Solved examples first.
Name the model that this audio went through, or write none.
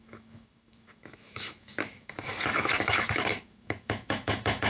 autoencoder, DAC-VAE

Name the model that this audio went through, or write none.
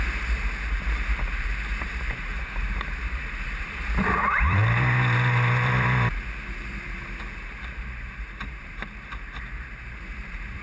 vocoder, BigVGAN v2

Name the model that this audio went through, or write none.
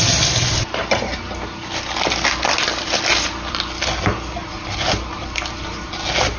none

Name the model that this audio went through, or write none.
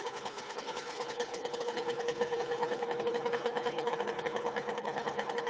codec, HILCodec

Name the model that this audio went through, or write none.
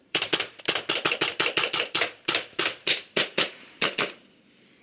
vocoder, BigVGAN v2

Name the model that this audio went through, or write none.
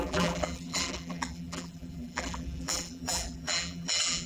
vocoder, BigVGAN v2